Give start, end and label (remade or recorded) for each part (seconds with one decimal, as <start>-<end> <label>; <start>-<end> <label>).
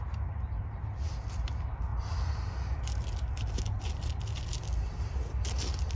0.0-6.0 recorded